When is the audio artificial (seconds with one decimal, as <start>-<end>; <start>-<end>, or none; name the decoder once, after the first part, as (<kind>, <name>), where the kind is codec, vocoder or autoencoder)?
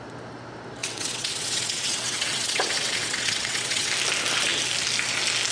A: 0.8-3.9 (vocoder, WaveNeXt)